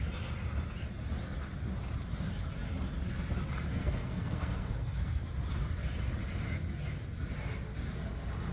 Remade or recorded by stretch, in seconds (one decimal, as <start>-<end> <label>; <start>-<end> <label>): 0.0-3.7 recorded; 3.7-5.2 remade; 5.2-8.5 recorded